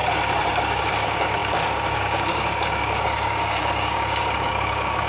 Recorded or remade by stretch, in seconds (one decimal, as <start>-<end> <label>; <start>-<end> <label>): 0.0-0.5 recorded; 0.5-5.1 remade